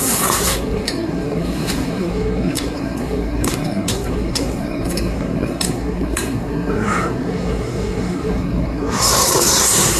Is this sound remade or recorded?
remade